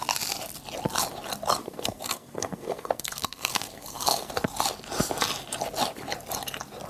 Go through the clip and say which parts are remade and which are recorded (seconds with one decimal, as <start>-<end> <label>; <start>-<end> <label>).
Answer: 0.0-1.6 recorded; 1.6-4.3 remade; 4.3-6.9 recorded